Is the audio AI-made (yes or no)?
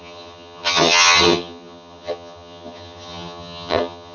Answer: yes